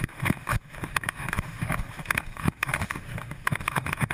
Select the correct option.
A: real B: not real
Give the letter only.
B